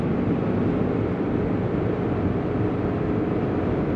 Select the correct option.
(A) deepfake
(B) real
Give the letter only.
B